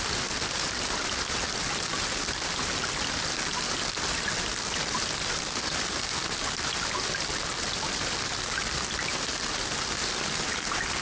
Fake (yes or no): no